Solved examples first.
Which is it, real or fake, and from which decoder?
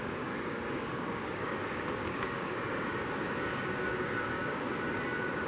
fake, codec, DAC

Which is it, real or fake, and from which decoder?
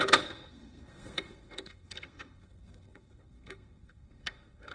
fake, codec, SNAC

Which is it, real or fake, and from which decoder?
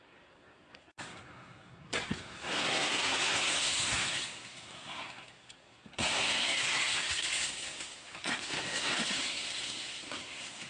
fake, codec, SNAC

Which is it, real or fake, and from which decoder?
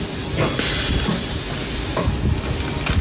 real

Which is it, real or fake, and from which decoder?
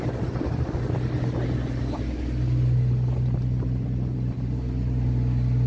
real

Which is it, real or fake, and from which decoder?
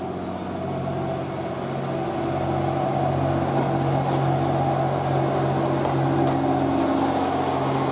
real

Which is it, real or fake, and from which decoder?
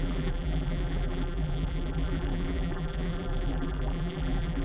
fake, vocoder, BigVGAN v2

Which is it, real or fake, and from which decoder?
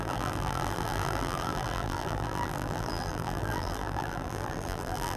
fake, vocoder, BigVGAN v2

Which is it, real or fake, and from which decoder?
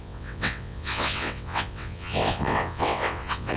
fake, vocoder, WaveNeXt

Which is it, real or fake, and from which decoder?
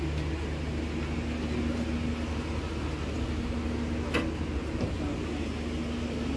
real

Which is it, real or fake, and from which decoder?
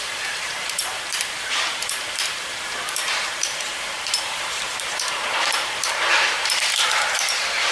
fake, vocoder, BigVGAN v2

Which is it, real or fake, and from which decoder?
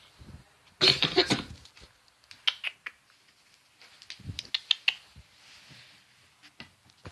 real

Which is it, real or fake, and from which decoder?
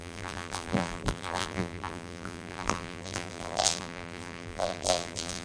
fake, vocoder, BigVGAN v2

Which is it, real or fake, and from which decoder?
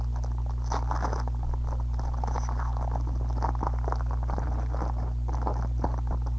real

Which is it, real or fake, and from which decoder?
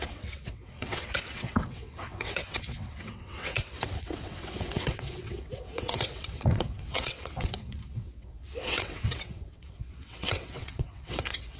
fake, vocoder, WaveNeXt